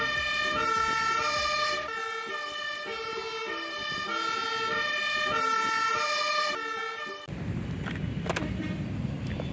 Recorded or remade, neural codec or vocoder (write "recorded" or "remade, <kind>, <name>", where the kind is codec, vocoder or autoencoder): recorded